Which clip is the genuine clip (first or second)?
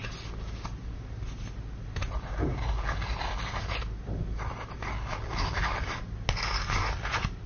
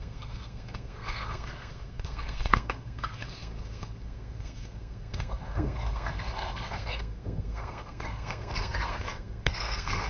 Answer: first